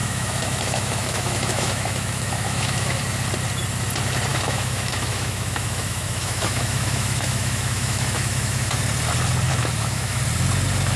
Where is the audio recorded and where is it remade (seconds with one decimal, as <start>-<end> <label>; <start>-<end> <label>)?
0.0-3.0 remade; 3.0-4.3 recorded; 4.3-8.8 remade; 8.8-9.5 recorded; 9.5-10.2 remade; 10.2-11.0 recorded